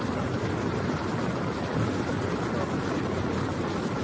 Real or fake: real